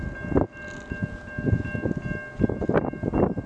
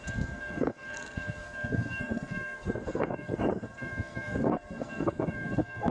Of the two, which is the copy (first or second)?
second